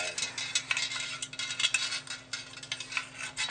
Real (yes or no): yes